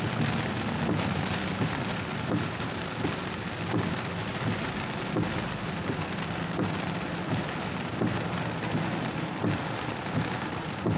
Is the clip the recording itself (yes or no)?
yes